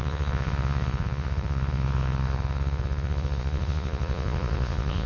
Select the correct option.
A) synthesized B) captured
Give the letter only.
A